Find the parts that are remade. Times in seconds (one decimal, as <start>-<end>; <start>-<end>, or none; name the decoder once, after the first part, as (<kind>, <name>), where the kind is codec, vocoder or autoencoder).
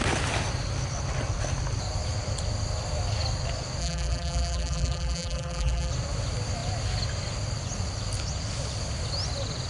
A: 3.8-5.9 (vocoder, BigVGAN v2)